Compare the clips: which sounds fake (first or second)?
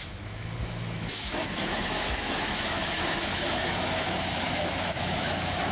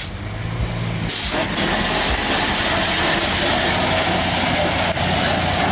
first